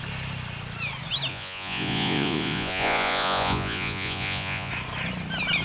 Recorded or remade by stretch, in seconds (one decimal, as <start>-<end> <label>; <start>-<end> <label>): 0.0-1.3 recorded; 1.3-4.7 remade; 4.7-5.6 recorded